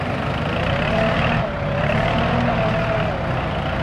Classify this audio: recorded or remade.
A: recorded